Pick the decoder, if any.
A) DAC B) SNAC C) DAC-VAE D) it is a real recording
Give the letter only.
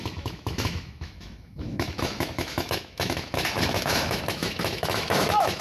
C